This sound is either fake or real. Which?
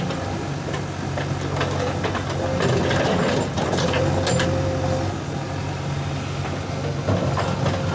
real